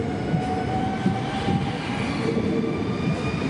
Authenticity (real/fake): real